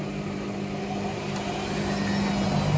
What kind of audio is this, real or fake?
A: real